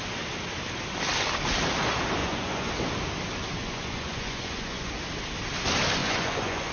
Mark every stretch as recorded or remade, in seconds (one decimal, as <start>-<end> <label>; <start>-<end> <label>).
0.0-2.2 recorded; 2.2-2.7 remade; 2.7-3.6 recorded; 3.6-4.9 remade; 4.9-6.0 recorded; 6.0-6.7 remade